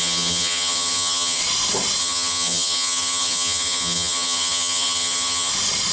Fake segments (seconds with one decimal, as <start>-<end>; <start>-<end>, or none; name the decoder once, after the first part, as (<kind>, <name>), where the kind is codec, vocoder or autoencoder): 0.0-1.4 (vocoder, HiFi-GAN); 2.0-5.5